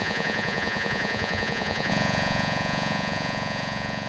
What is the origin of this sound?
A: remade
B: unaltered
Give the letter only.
A